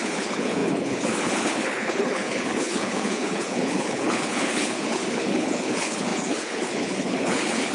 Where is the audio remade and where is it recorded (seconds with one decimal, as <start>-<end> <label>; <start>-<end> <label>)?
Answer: 0.0-7.7 remade